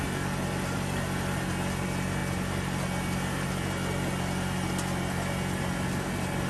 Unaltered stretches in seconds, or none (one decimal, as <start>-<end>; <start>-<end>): 0.0-6.5